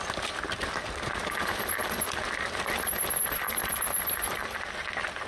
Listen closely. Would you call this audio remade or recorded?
remade